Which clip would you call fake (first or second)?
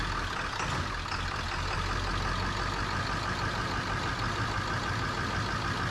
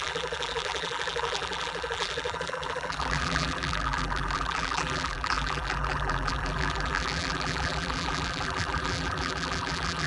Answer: second